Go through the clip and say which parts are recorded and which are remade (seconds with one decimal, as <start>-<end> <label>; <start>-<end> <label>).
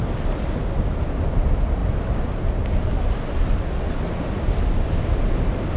0.0-5.8 recorded